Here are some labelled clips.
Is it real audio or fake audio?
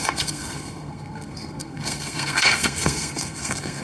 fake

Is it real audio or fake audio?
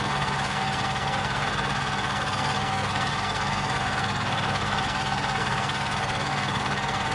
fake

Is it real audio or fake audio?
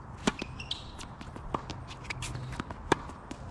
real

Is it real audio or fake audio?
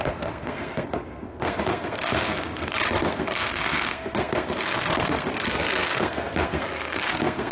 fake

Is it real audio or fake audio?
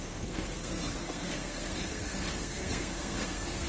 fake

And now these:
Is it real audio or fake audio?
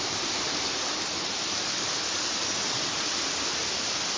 real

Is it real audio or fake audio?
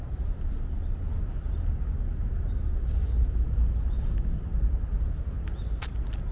real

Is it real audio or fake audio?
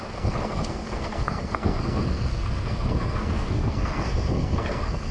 fake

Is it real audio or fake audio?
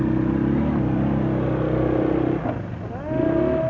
real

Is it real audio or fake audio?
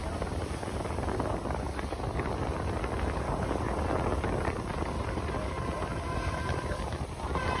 real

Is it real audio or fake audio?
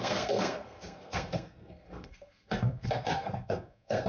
fake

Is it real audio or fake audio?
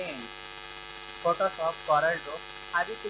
real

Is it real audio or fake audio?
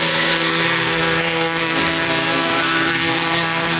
fake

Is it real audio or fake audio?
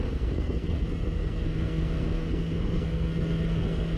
fake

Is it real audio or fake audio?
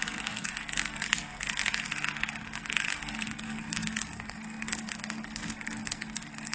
fake